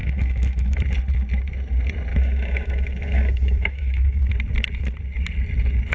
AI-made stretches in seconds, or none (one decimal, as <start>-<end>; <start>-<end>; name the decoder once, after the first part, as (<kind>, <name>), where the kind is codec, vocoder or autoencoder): 0.0-0.8 (autoencoder, DAC-VAE); 2.1-4.2